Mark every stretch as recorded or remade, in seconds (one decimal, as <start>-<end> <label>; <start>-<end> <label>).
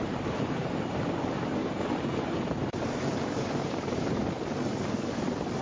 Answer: 0.0-4.2 remade; 4.2-5.6 recorded